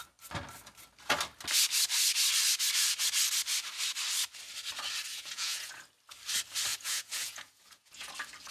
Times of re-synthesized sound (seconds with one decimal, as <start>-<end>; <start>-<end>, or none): 5.1-5.8; 6.7-8.1